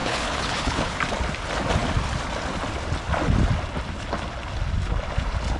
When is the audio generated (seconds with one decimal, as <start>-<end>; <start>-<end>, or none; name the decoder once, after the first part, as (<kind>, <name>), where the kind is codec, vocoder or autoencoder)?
0.0-1.0 (codec, HILCodec)